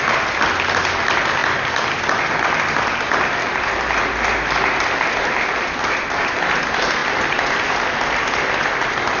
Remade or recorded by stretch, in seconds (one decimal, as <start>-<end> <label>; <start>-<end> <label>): 0.0-9.2 recorded